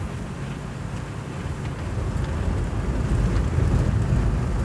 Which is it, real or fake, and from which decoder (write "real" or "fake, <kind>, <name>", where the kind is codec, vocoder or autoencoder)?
real